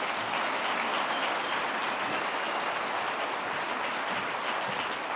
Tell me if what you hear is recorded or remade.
recorded